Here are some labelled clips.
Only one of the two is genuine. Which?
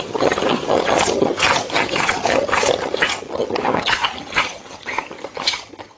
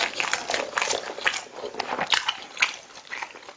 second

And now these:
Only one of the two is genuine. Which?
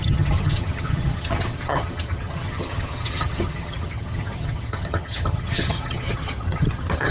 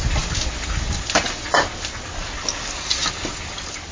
second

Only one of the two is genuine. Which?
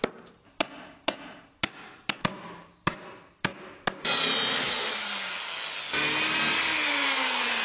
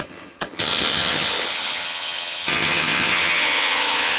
first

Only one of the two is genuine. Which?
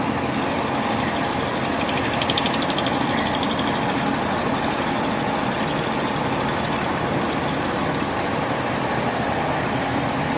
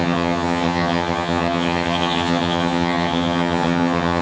first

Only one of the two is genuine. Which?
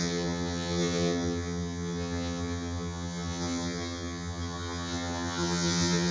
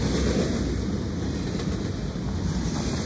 second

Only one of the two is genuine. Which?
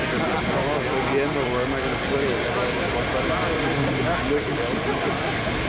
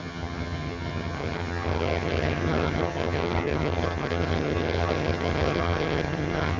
first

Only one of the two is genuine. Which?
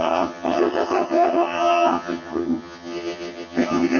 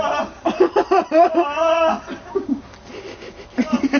second